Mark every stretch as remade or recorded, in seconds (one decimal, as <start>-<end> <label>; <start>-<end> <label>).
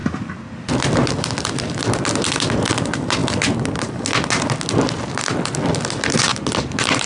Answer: 0.0-7.1 recorded